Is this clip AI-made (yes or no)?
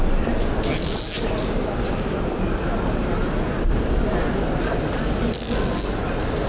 no